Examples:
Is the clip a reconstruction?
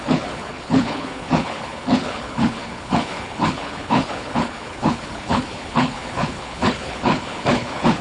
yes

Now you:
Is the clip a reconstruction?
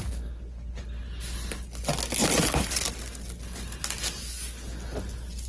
no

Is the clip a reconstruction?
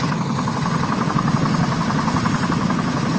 no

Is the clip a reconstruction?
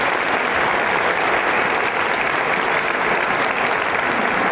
no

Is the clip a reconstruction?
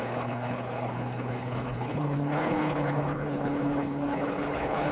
yes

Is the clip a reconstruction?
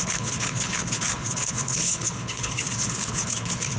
yes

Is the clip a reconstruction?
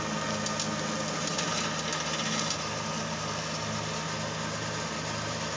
no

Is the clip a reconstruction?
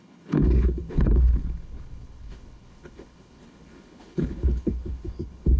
yes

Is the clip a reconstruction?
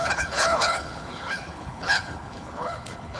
yes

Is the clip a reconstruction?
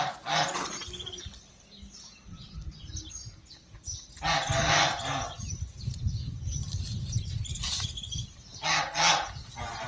no